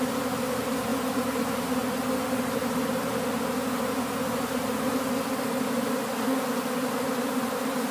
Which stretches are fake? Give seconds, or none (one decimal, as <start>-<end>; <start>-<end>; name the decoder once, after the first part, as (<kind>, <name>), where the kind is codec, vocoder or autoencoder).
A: none

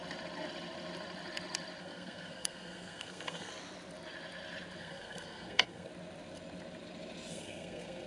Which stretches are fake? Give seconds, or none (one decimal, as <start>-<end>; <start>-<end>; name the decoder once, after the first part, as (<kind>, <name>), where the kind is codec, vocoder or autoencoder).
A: 1.8-3.5 (codec, SNAC); 4.8-5.9; 7.3-8.1

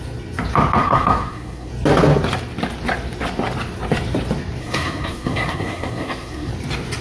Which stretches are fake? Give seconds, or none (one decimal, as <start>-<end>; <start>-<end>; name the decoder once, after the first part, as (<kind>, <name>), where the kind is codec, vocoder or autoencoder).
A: 0.8-1.7 (codec, SNAC); 4.6-6.5

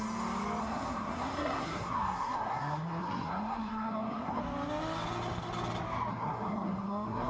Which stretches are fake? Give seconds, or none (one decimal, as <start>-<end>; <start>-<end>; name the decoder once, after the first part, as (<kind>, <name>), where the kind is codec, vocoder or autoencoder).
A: 0.6-4.4 (codec, SNAC); 6.1-7.3

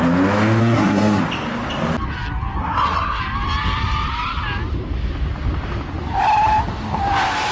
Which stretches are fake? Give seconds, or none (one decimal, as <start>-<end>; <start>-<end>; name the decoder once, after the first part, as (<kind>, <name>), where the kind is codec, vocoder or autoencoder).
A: 0.6-1.2 (codec, SNAC); 2.6-3.2

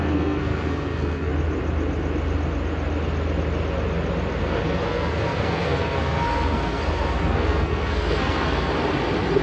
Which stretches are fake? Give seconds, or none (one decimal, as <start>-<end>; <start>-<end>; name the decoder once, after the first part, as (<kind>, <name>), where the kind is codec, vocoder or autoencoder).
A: 0.0-1.3 (codec, SNAC); 4.4-8.7

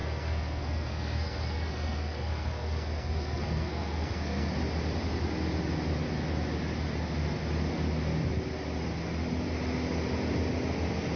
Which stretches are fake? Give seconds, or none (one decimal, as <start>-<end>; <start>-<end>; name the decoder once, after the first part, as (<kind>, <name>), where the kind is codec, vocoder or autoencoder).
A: 0.0-4.5 (codec, SNAC)

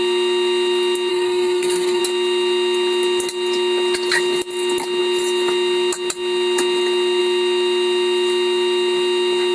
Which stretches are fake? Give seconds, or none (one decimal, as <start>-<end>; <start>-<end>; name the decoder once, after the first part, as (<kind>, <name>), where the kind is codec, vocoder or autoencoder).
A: 1.1-2.0 (codec, SNAC)